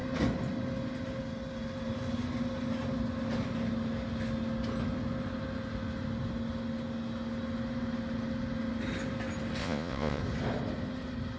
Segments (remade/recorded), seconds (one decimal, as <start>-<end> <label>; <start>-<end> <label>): 0.0-9.6 recorded; 9.6-10.2 remade; 10.2-11.4 recorded